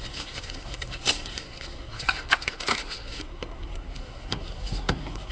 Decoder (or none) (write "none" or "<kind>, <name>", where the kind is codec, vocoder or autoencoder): codec, SNAC